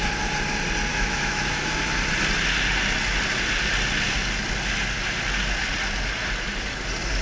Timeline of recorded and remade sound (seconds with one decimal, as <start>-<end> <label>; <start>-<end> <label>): 0.0-0.9 recorded; 0.9-1.8 remade; 1.8-7.2 recorded